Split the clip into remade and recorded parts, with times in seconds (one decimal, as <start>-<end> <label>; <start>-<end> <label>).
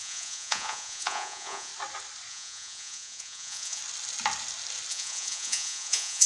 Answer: 0.0-1.7 remade; 1.7-2.3 recorded; 2.3-3.8 remade; 3.8-4.9 recorded; 4.9-6.3 remade